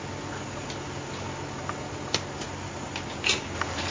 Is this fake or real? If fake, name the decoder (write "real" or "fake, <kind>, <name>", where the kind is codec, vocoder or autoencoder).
real